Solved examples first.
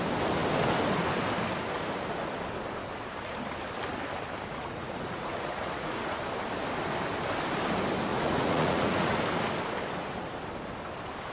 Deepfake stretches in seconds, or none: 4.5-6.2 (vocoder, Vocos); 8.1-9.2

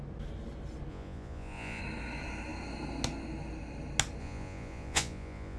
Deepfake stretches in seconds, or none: 0.9-1.8 (vocoder, Vocos); 4.2-5.6

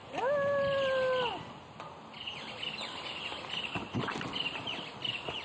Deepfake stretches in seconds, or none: none